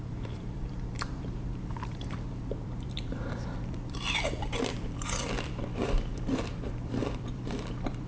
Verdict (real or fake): fake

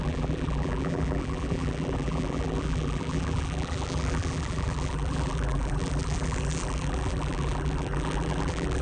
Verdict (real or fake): fake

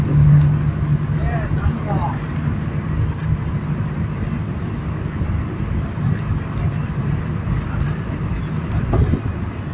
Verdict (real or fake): real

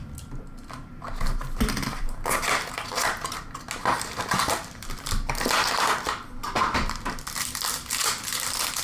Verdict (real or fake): real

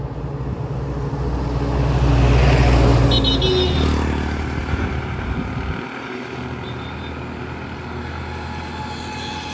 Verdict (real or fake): real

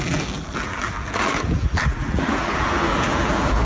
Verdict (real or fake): fake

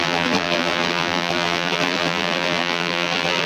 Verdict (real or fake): fake